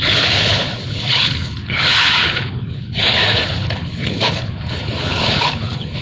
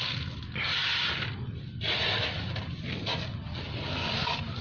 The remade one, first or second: first